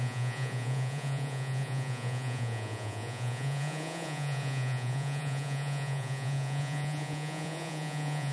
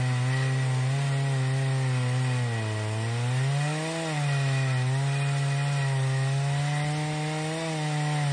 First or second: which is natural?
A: second